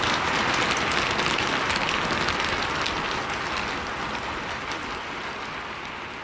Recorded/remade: recorded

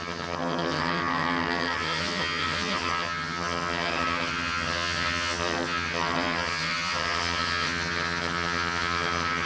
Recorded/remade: remade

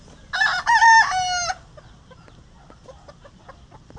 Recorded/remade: recorded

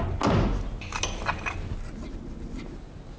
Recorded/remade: recorded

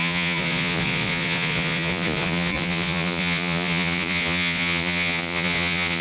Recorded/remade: remade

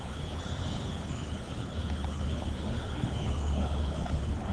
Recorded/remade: remade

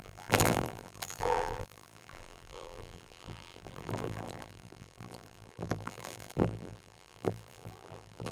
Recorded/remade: remade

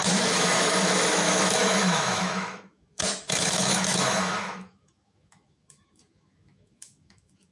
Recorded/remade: remade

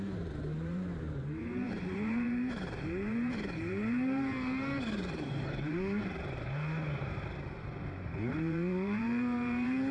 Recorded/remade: remade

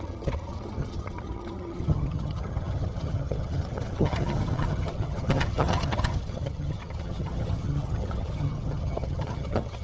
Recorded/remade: remade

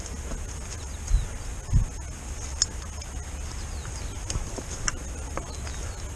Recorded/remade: recorded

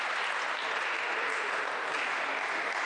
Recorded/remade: recorded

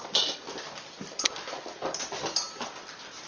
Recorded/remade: recorded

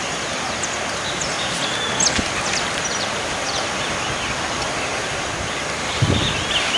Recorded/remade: recorded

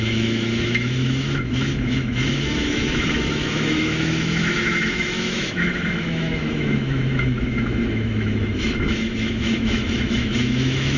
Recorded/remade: remade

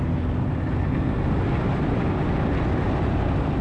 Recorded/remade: recorded